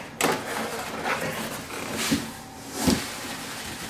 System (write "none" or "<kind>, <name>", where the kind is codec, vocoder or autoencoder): none